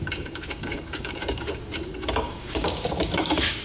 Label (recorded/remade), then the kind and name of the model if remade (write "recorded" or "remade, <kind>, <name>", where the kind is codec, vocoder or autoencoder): remade, codec, DAC